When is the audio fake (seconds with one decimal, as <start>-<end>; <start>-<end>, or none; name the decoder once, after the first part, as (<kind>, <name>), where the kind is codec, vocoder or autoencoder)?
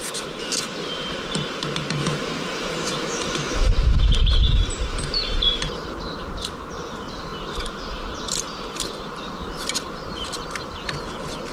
2.0-3.7 (autoencoder, DAC-VAE)